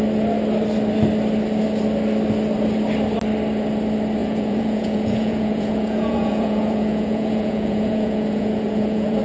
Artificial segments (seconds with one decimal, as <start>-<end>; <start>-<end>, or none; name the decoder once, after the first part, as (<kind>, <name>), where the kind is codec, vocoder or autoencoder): 4.2-9.2 (vocoder, Vocos)